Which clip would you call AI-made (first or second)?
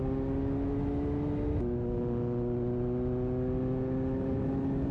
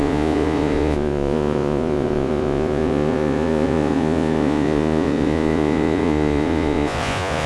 second